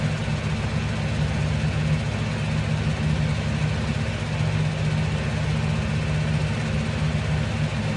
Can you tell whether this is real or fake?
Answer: real